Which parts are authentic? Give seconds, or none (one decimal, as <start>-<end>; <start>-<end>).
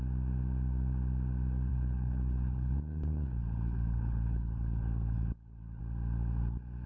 0.0-1.7; 5.8-6.9